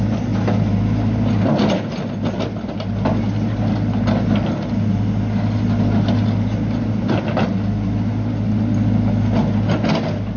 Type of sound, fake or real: real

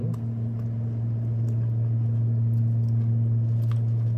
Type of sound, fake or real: real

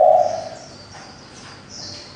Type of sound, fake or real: real